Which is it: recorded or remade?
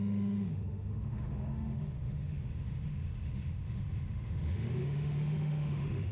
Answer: remade